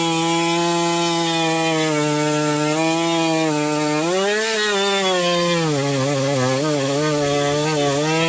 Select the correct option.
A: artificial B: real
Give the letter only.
B